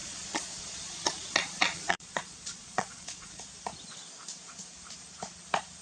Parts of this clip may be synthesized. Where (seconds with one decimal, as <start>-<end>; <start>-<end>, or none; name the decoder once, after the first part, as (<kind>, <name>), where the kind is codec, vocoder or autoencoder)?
0.0-3.5 (vocoder, Vocos)